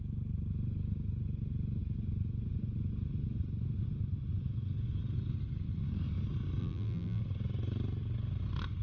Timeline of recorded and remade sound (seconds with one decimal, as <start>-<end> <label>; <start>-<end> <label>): 0.0-6.6 recorded; 6.6-7.2 remade; 7.2-8.8 recorded